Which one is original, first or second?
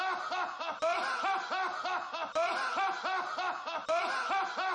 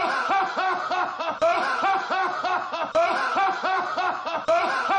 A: first